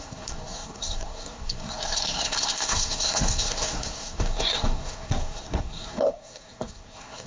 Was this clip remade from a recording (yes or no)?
yes